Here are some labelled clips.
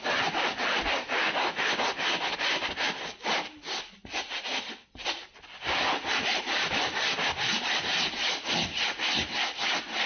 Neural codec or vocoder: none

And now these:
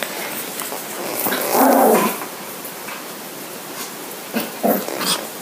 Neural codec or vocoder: none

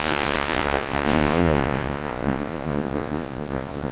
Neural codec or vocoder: vocoder, Vocos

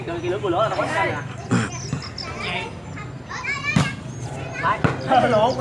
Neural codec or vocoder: none